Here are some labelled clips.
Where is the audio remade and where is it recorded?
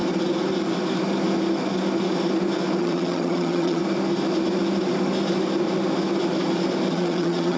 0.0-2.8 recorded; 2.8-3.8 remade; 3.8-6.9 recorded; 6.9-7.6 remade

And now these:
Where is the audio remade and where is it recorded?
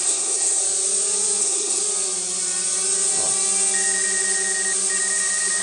0.0-0.6 remade; 0.6-1.4 recorded; 1.4-1.8 remade; 1.8-5.6 recorded